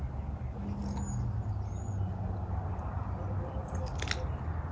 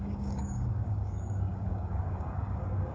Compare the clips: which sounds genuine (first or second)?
first